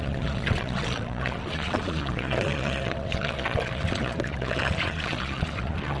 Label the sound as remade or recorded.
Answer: remade